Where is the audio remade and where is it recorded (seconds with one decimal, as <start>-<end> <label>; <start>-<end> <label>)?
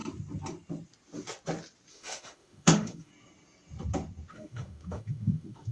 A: 0.0-1.9 recorded; 1.9-3.1 remade; 3.1-4.3 recorded; 4.3-5.7 remade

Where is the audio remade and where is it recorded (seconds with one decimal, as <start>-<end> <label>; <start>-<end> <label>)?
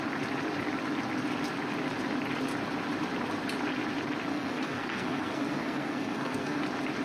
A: 0.0-4.3 recorded; 4.3-6.6 remade; 6.6-7.0 recorded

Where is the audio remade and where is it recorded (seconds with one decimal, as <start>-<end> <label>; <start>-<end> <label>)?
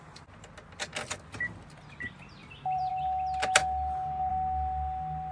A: 0.0-2.4 recorded; 2.4-2.9 remade; 2.9-5.3 recorded